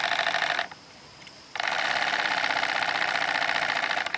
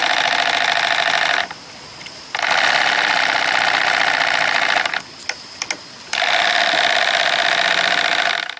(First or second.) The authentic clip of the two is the second